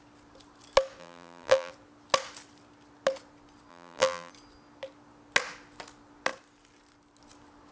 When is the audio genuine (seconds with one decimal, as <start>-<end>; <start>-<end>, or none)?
0.0-1.0; 1.7-3.7; 4.3-7.7